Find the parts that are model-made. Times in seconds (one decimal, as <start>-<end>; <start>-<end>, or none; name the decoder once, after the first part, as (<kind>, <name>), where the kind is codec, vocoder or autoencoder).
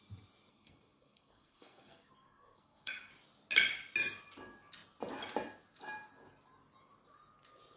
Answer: 0.5-3.1 (codec, SNAC)